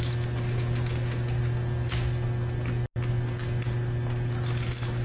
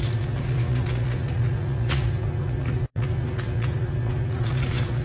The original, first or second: first